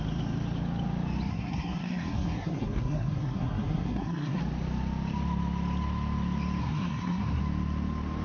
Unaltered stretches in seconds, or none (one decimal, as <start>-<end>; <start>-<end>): 0.0-1.3; 4.4-6.6; 7.4-8.2